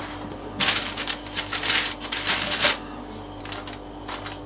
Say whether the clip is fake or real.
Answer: real